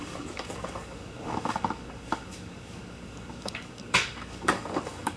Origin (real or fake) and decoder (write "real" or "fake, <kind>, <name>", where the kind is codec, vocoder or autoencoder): fake, codec, DAC